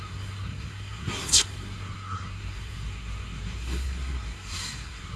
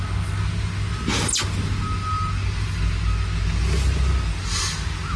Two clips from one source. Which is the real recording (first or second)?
second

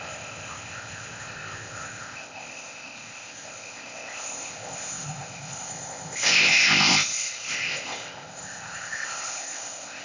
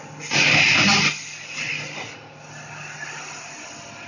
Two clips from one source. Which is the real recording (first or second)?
second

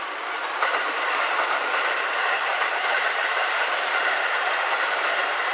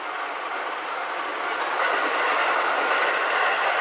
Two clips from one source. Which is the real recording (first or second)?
second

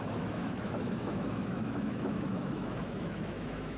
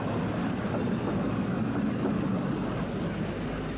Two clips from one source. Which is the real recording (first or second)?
second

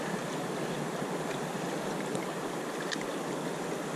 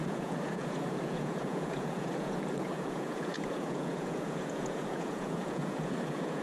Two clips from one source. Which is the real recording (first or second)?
first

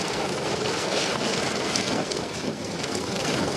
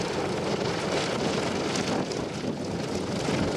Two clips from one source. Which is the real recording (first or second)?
second